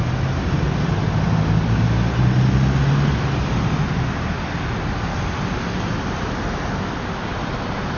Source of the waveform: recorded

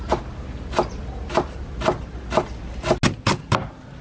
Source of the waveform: recorded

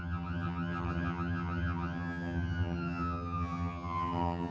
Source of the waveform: remade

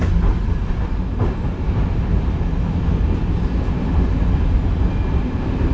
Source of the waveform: recorded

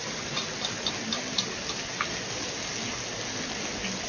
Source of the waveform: recorded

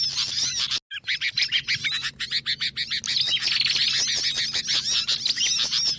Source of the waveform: recorded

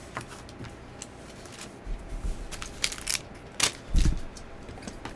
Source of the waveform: recorded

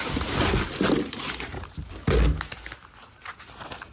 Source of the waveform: recorded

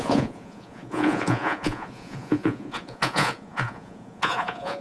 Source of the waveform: remade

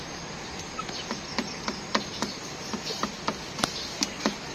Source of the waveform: recorded